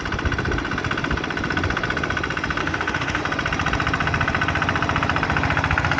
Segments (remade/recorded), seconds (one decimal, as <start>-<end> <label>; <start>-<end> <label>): 0.0-2.6 recorded; 2.6-3.2 remade; 3.2-6.0 recorded